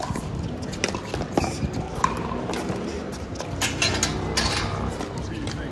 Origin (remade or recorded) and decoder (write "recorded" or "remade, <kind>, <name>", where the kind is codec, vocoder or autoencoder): recorded